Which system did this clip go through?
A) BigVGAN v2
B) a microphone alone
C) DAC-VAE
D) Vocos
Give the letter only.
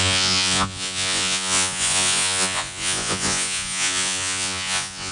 D